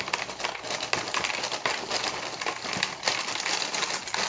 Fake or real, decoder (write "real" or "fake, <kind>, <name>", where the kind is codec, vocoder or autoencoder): real